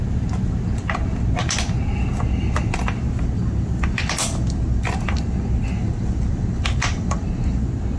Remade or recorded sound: recorded